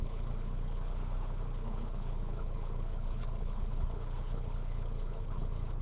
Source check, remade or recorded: remade